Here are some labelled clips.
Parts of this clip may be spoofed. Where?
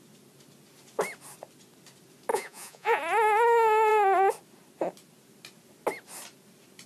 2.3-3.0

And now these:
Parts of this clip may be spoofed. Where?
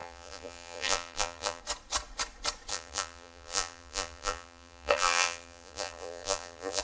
0.0-1.6; 2.7-6.8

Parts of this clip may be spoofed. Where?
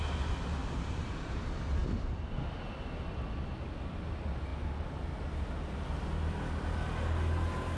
0.6-1.4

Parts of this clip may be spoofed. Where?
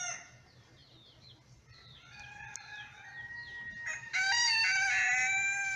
none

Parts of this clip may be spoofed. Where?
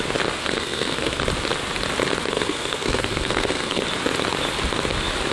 0.4-1.2; 2.3-3.8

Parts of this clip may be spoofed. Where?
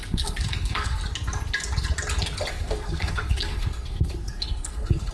0.0-1.0; 2.5-5.1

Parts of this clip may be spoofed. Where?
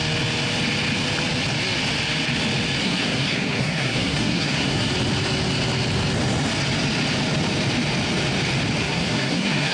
2.8-4.9; 8.8-9.7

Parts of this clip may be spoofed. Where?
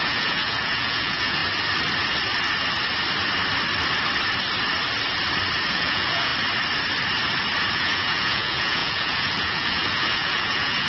0.0-1.4; 5.7-6.3; 7.7-10.9